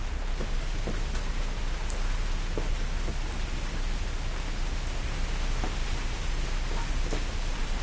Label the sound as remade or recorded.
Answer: recorded